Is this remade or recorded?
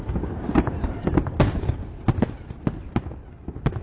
recorded